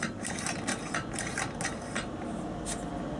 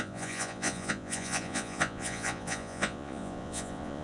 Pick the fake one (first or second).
second